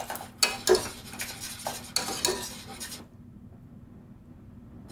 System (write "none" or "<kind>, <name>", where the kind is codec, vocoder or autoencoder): none